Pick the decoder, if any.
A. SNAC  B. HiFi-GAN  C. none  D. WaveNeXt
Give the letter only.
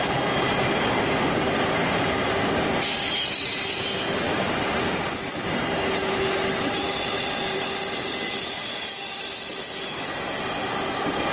C